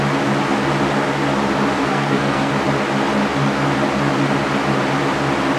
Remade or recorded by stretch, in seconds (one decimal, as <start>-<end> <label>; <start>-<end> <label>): 0.0-1.8 recorded; 1.8-2.5 remade; 2.5-5.6 recorded